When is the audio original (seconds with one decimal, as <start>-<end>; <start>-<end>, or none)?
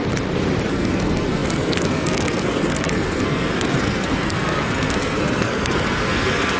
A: 0.0-0.7